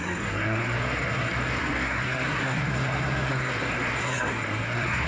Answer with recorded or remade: remade